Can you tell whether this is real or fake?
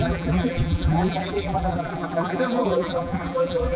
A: fake